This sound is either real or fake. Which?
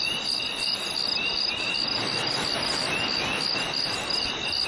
real